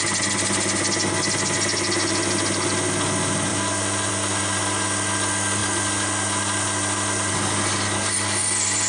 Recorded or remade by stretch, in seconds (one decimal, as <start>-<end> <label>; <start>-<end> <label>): 0.0-3.5 recorded; 3.5-4.1 remade; 4.1-5.6 recorded; 5.6-7.3 remade; 7.3-8.9 recorded